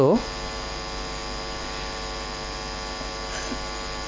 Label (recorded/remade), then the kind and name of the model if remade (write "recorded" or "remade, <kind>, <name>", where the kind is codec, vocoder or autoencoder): recorded